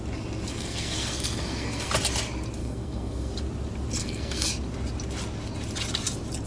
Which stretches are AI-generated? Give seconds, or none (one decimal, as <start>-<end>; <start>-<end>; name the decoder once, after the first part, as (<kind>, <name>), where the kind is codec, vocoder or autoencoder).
0.5-1.9 (codec, SNAC); 2.6-3.3; 4.0-4.5